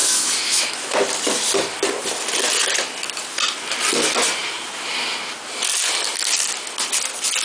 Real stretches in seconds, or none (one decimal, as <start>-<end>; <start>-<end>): 1.0-7.4

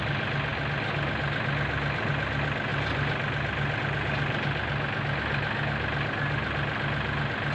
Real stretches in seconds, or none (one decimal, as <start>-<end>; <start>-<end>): 0.0-7.5

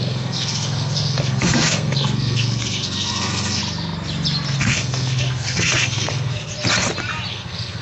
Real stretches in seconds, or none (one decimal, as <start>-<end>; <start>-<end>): 3.6-4.6; 6.5-7.3

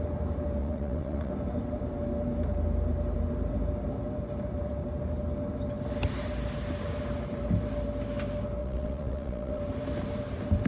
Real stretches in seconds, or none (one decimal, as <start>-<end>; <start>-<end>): 0.0-0.6; 1.3-8.6; 9.6-10.7

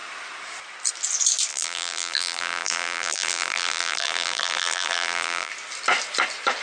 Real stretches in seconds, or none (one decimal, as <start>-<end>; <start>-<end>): 0.0-1.5; 5.5-6.6